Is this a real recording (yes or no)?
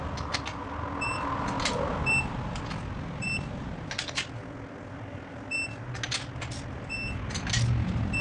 yes